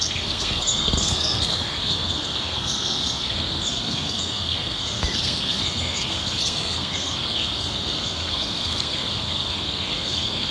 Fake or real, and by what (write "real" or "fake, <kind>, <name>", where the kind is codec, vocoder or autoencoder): fake, codec, SNAC